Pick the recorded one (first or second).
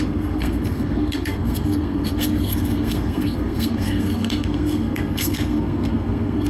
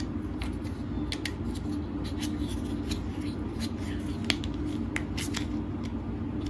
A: second